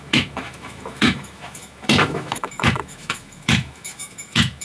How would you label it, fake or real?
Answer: fake